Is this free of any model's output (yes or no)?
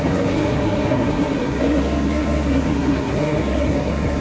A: no